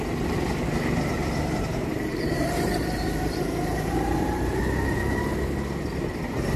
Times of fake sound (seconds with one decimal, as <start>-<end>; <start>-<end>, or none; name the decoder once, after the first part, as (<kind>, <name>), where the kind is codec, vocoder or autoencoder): 1.1-4.6 (vocoder, BigVGAN v2)